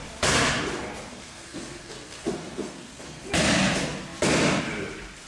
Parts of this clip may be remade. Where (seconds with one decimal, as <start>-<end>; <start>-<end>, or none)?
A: 1.1-3.3